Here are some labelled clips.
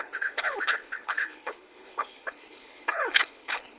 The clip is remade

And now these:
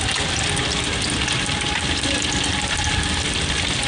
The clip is recorded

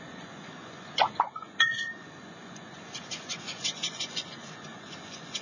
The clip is remade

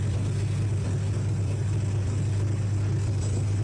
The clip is recorded